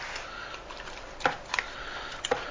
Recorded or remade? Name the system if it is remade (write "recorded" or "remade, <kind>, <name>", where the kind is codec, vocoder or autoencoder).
recorded